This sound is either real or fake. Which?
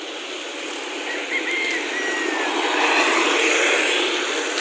real